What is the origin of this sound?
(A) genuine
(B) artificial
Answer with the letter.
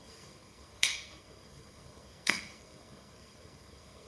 B